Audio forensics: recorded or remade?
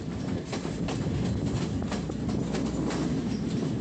recorded